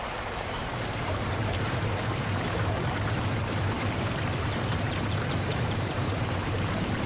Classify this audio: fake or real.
fake